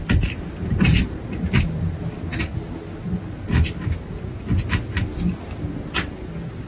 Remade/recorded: recorded